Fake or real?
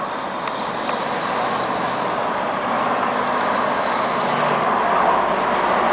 real